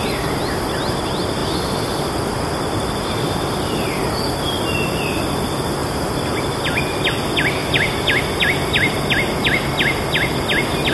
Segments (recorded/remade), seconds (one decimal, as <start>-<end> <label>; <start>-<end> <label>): 0.0-5.8 recorded; 5.8-6.6 remade; 6.6-7.6 recorded; 7.6-8.2 remade; 8.2-10.9 recorded

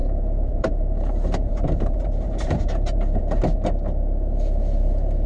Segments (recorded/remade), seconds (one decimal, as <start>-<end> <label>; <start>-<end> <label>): 0.0-3.2 remade; 3.2-5.3 recorded

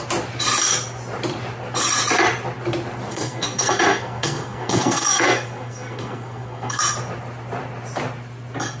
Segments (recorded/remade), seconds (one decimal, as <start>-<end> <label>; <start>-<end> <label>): 0.0-3.1 recorded; 3.1-6.8 remade; 6.8-8.8 recorded

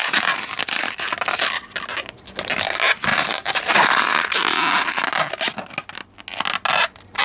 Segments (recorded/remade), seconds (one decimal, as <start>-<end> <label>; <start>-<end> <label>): 0.0-0.8 remade; 0.8-3.1 recorded; 3.1-4.3 remade; 4.3-7.2 recorded

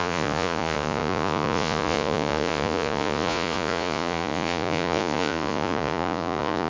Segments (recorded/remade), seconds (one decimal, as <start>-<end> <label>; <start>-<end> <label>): 0.0-6.7 remade

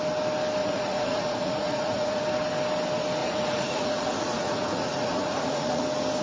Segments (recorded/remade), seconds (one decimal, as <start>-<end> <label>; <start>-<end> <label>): 0.0-0.6 recorded; 0.6-2.2 remade; 2.2-3.2 recorded; 3.2-5.8 remade; 5.8-6.2 recorded